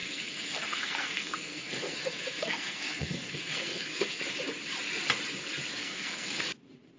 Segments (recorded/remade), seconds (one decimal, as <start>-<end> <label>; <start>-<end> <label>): 0.0-4.2 remade; 4.2-5.8 recorded; 5.8-6.4 remade; 6.4-7.0 recorded